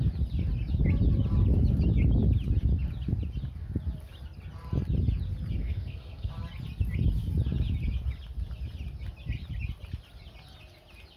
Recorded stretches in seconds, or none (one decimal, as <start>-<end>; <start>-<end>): 0.0-5.6; 6.3-11.2